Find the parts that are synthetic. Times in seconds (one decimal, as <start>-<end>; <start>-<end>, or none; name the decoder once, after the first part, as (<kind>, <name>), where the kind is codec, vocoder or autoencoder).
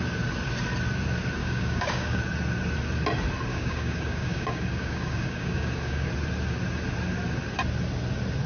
1.4-2.2 (codec, DAC); 3.5-6.1